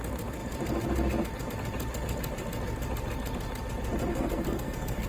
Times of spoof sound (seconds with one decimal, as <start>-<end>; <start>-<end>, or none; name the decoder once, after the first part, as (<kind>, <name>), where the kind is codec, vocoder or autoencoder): 4.1-5.1 (codec, SNAC)